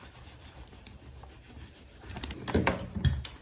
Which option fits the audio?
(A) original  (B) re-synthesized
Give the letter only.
A